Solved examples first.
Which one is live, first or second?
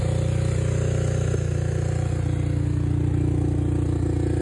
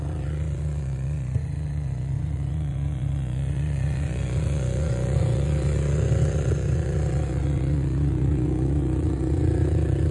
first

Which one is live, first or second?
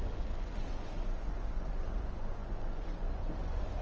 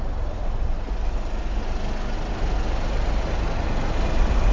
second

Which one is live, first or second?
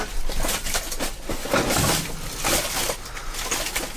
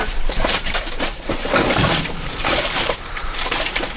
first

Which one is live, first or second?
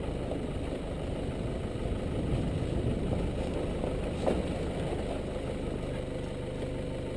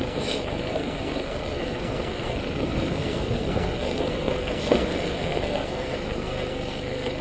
first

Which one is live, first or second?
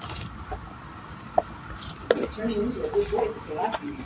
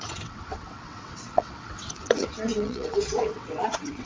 first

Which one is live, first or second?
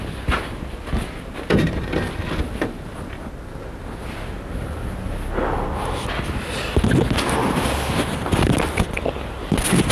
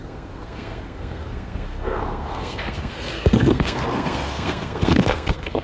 first